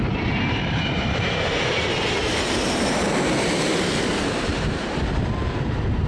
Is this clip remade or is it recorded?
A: remade